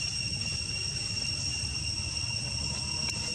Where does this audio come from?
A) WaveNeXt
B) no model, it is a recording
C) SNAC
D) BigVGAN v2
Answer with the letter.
B